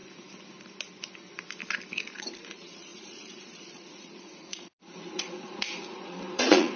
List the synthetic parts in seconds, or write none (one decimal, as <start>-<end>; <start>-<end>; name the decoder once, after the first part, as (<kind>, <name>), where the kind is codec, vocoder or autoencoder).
2.0-6.8 (vocoder, Vocos)

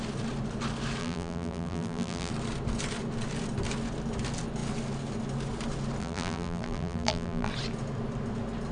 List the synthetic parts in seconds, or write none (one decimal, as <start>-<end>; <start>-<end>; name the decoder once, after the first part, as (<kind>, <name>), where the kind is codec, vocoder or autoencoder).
1.0-2.3 (vocoder, BigVGAN v2); 6.0-7.5

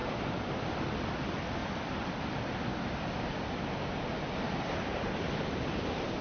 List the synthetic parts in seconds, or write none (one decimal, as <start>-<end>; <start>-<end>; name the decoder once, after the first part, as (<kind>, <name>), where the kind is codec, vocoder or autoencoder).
0.0-0.7 (vocoder, BigVGAN v2); 1.6-3.0

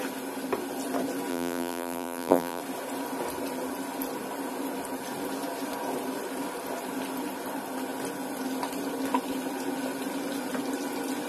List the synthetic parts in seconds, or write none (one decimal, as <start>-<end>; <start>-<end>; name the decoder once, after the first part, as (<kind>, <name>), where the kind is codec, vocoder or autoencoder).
1.3-2.6 (vocoder, BigVGAN v2)

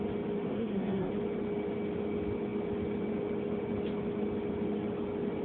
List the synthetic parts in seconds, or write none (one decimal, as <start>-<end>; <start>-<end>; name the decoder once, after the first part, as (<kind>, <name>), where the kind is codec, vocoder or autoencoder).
0.5-1.1 (codec, SNAC)

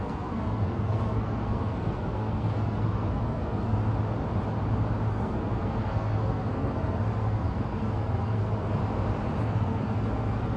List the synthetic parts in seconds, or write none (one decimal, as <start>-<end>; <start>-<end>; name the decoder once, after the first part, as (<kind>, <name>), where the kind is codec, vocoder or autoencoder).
0.0-3.8 (codec, SNAC); 5.1-8.8; 9.4-10.6

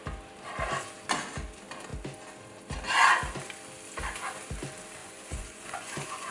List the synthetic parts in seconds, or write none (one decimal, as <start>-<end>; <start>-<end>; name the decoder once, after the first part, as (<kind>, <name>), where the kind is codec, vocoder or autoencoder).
5.0-6.3 (vocoder, Vocos)

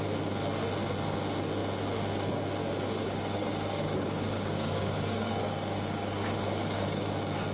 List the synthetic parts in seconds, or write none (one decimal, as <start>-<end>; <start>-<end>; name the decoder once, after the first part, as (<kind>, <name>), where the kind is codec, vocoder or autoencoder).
2.6-7.1 (codec, DAC)